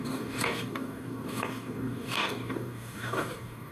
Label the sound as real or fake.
fake